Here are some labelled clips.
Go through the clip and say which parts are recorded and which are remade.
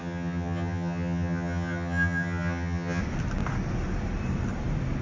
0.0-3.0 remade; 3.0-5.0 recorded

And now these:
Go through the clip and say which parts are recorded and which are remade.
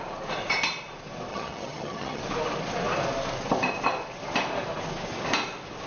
0.0-1.3 recorded; 1.3-2.2 remade; 2.2-5.9 recorded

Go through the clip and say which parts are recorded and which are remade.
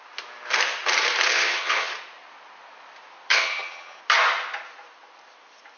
0.0-1.3 recorded; 1.3-1.9 remade; 1.9-3.3 recorded; 3.3-4.0 remade; 4.0-5.8 recorded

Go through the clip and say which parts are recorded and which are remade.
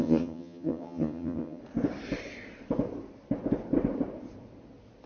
0.0-1.6 remade; 1.6-5.1 recorded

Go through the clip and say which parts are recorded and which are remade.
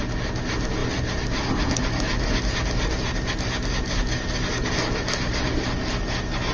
0.0-6.5 recorded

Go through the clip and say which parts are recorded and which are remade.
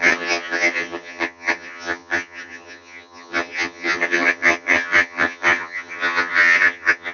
0.0-7.1 remade